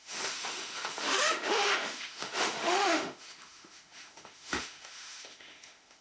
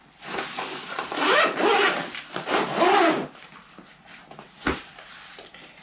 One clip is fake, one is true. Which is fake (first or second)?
first